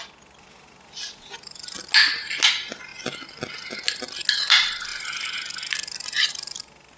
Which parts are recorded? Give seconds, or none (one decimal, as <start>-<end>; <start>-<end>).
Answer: 0.0-7.0